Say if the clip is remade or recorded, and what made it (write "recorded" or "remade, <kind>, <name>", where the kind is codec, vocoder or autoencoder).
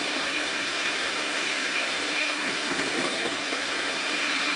remade, codec, SNAC